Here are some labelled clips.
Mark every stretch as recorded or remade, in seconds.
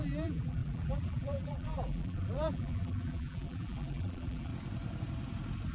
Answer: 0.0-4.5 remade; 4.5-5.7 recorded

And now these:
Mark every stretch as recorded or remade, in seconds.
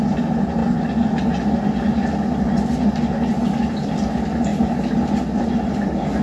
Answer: 0.0-6.2 recorded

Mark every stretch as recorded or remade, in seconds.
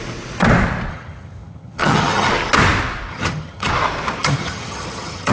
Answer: 0.0-0.9 recorded; 0.9-2.3 remade; 2.3-3.1 recorded; 3.1-3.7 remade; 3.7-4.2 recorded; 4.2-5.3 remade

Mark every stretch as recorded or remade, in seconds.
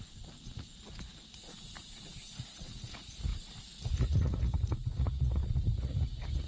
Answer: 0.0-3.3 remade; 3.3-3.9 recorded; 3.9-6.5 remade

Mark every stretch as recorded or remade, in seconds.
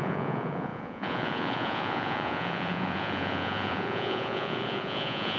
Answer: 0.0-5.4 remade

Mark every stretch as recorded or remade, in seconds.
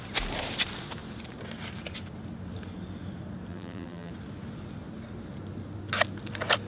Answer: 0.0-3.5 recorded; 3.5-4.1 remade; 4.1-6.7 recorded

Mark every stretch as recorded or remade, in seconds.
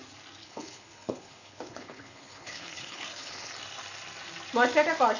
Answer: 0.0-0.4 recorded; 0.4-3.5 remade; 3.5-5.2 recorded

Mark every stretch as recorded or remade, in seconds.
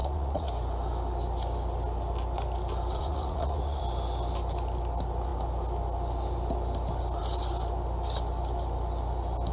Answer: 0.0-0.5 remade; 0.5-3.0 recorded; 3.0-3.8 remade; 3.8-9.5 recorded